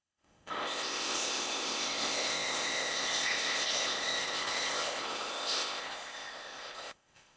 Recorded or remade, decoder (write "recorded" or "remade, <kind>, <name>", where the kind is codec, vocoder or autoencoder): remade, codec, ZipCodec